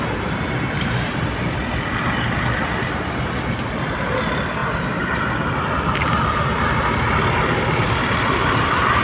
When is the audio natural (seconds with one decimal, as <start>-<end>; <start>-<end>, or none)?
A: 0.0-9.0